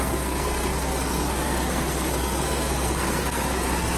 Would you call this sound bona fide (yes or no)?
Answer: no